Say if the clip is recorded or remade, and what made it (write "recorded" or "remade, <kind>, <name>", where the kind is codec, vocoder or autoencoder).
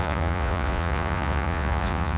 remade, vocoder, Vocos